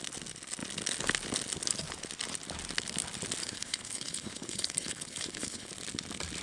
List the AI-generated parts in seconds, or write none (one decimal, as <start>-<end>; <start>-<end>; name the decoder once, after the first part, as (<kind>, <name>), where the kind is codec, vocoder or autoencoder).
3.4-5.7 (codec, HILCodec)